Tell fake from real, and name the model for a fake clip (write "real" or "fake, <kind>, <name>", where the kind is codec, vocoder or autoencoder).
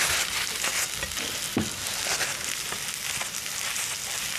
real